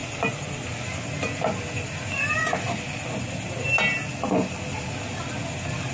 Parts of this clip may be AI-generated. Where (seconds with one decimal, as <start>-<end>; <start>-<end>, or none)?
none